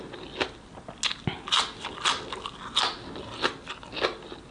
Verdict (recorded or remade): recorded